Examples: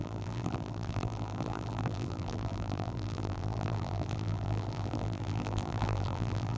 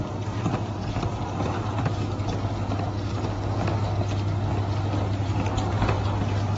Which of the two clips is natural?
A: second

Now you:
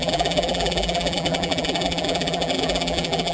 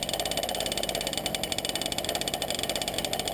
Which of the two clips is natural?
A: second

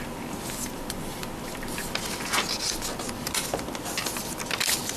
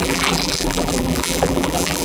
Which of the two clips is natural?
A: first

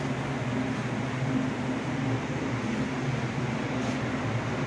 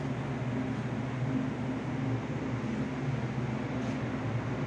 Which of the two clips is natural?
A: second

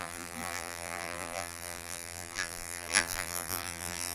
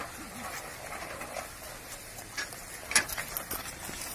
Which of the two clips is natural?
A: second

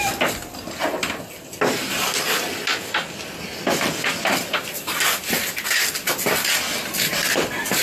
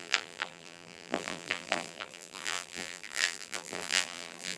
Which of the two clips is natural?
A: first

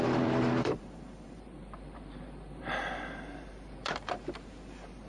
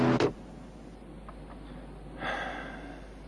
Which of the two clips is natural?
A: second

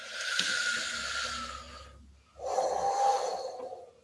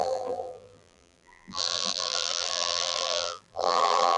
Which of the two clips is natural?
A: first